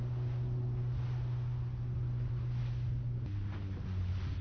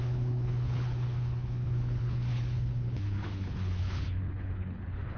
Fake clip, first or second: second